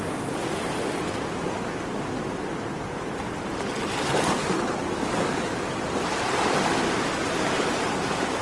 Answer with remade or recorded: recorded